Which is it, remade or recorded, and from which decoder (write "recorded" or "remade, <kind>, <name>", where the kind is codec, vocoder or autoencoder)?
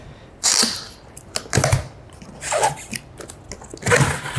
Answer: recorded